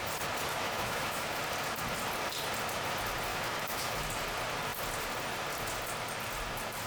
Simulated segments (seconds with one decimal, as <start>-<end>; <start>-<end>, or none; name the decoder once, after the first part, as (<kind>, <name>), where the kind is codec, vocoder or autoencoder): 0.5-1.4 (autoencoder, DAC-VAE); 3.3-4.1